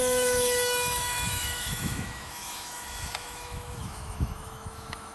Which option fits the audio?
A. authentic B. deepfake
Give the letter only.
B